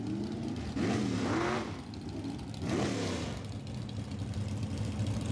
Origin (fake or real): real